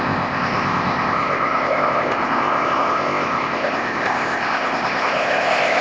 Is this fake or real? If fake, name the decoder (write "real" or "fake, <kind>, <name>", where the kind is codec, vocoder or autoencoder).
fake, codec, ZipCodec